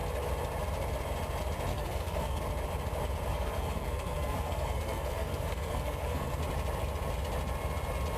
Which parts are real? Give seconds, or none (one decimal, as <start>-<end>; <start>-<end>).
0.0-1.7; 2.4-3.3; 6.4-8.2